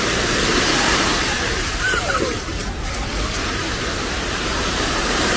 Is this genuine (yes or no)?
no